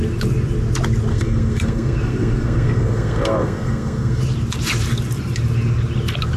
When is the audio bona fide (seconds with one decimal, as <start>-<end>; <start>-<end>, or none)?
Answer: 0.0-1.1; 4.2-6.4